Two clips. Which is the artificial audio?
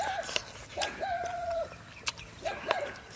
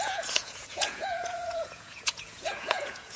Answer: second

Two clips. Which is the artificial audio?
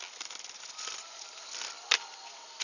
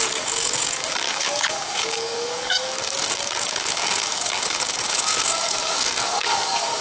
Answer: second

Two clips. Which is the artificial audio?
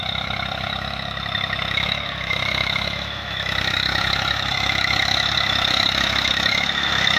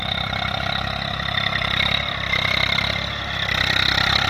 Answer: first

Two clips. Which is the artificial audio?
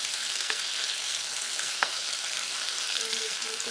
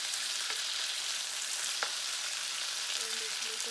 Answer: first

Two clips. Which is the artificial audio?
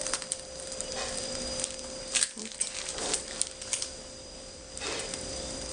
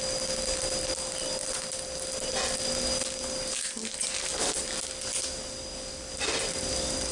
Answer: first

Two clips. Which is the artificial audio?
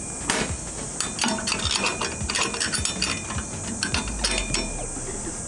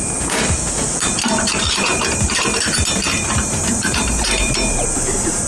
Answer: second